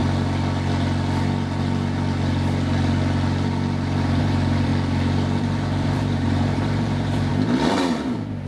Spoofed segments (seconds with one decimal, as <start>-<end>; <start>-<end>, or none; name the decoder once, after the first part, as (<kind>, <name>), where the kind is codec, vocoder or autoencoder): 4.2-4.7 (vocoder, BigVGAN v2); 5.4-7.3; 7.9-8.5